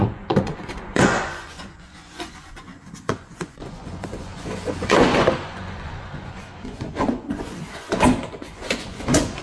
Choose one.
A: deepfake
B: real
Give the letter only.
A